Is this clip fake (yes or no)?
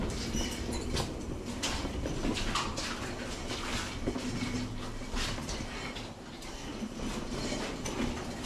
no